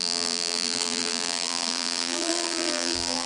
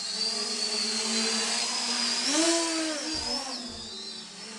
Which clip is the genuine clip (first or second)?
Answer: second